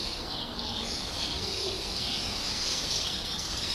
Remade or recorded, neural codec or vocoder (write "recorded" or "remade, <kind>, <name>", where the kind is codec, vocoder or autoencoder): remade, codec, SNAC